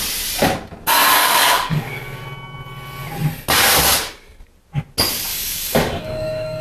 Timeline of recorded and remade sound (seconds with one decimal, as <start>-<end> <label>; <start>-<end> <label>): 0.0-1.2 recorded; 1.2-2.2 remade; 2.2-5.3 recorded; 5.3-6.6 remade